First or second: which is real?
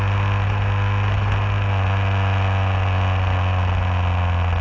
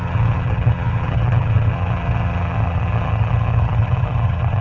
first